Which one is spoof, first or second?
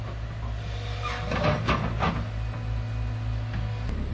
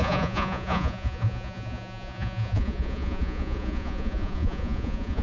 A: second